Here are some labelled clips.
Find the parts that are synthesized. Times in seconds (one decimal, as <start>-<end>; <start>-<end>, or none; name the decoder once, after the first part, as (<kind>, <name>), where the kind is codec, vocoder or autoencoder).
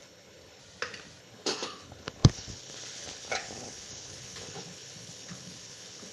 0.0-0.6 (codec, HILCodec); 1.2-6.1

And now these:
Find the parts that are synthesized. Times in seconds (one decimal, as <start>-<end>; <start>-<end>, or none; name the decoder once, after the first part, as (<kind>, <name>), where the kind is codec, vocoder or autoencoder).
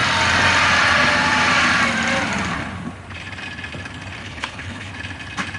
4.2-4.9 (codec, HILCodec)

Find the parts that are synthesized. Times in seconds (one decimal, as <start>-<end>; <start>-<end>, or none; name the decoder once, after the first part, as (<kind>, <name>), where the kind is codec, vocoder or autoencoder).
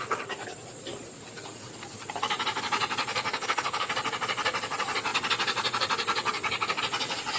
3.3-3.9 (codec, HILCodec)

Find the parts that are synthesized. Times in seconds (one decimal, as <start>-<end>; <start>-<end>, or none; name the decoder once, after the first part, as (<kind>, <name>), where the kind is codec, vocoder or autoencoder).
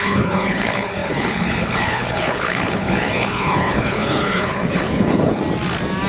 0.0-5.4 (codec, HILCodec)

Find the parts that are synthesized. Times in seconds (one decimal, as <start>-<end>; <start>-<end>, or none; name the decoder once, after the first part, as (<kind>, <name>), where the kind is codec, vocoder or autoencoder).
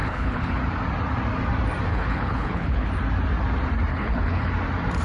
0.0-0.6 (codec, HILCodec); 1.9-2.9; 3.9-4.5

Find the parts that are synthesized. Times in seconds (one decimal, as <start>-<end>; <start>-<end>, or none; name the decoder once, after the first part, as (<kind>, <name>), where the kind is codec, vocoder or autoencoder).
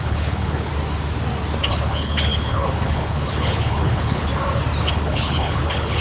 0.0-0.7 (codec, HILCodec); 1.7-4.3; 4.8-6.0